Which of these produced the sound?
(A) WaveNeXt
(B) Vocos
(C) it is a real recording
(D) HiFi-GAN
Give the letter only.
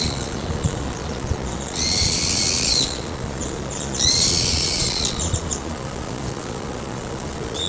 B